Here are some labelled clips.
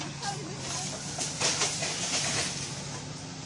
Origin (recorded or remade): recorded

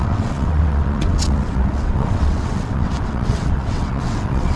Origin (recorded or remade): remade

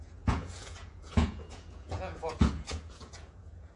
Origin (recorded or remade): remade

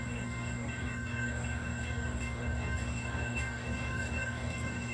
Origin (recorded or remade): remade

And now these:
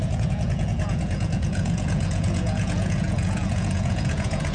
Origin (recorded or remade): remade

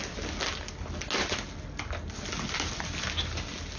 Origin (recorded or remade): recorded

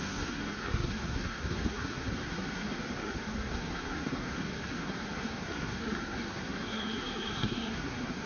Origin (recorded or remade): remade